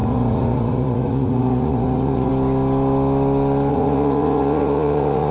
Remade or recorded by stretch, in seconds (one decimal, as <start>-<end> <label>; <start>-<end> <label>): 0.0-2.3 remade; 2.3-3.7 recorded; 3.7-5.3 remade